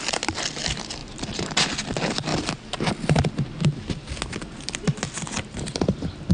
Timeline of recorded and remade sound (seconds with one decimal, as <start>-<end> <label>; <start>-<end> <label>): 0.0-1.0 recorded; 1.0-1.5 remade; 1.5-6.3 recorded